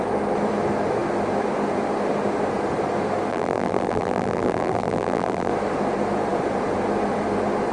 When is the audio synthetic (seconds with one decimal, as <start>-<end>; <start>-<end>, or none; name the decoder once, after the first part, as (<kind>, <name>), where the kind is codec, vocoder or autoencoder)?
3.3-5.5 (vocoder, BigVGAN v2)